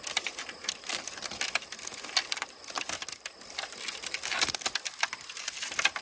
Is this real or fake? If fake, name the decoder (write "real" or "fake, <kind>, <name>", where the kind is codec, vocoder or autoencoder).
real